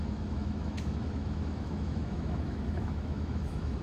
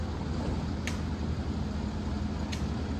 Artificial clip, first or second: first